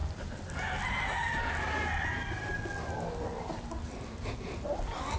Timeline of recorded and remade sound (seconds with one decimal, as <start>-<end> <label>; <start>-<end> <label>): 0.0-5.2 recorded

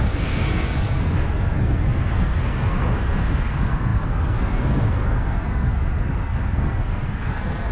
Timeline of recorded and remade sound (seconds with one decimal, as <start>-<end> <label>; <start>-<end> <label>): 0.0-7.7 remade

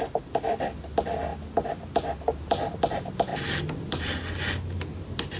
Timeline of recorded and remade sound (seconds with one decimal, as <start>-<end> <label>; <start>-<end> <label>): 0.0-5.4 recorded

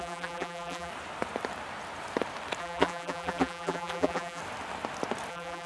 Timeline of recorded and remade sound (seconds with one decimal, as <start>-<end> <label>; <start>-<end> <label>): 0.0-0.9 remade; 0.9-2.6 recorded; 2.6-4.4 remade; 4.4-5.3 recorded; 5.3-5.7 remade

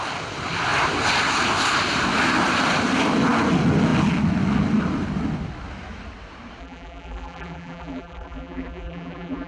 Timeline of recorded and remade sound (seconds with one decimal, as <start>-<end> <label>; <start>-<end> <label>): 0.0-6.6 recorded; 6.6-9.5 remade

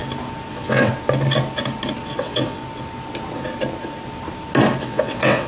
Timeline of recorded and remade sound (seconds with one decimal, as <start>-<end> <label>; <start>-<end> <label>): 0.0-0.5 recorded; 0.5-0.9 remade; 0.9-2.2 recorded; 2.2-2.6 remade; 2.6-4.8 recorded; 4.8-5.5 remade

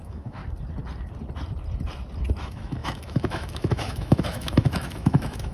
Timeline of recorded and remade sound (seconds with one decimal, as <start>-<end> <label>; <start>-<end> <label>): 0.0-0.4 remade; 0.4-2.4 recorded; 2.4-5.5 remade